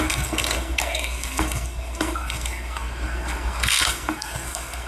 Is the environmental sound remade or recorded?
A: remade